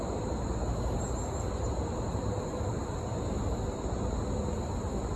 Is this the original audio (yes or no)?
yes